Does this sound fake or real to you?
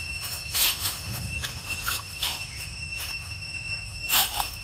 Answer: fake